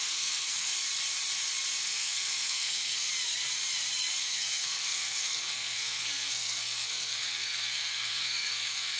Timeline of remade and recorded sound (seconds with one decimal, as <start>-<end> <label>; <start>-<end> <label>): 0.0-0.7 remade; 0.7-1.8 recorded; 1.8-3.1 remade; 3.1-4.2 recorded; 4.2-9.0 remade